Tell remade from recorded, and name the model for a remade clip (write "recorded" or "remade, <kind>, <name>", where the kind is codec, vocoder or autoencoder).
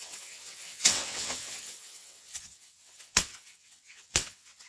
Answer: remade, vocoder, WaveNeXt